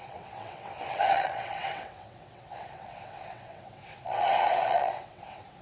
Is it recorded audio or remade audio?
remade